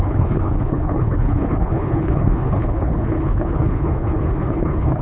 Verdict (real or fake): fake